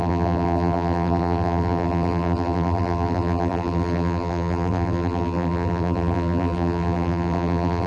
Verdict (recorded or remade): remade